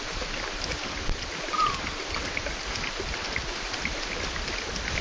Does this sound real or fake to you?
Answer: real